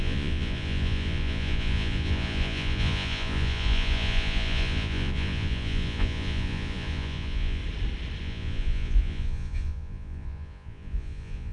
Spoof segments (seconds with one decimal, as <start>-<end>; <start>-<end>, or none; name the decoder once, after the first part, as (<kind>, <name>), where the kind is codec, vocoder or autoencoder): 0.0-7.6 (vocoder, Vocos); 8.2-11.5